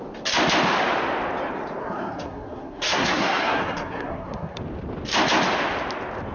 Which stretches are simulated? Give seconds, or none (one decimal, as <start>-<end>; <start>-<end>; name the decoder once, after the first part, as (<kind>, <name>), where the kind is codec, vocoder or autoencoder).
1.8-4.6 (codec, SNAC)